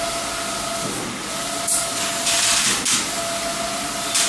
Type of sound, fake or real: real